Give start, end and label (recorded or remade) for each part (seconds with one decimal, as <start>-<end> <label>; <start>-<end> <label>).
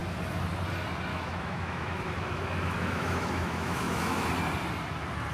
0.0-1.1 recorded; 1.1-4.3 remade; 4.3-5.3 recorded